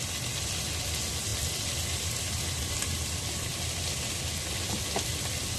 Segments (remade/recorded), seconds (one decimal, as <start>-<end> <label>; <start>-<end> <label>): 0.0-5.6 recorded